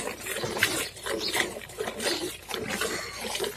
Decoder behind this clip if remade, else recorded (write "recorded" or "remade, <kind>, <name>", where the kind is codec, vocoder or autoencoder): recorded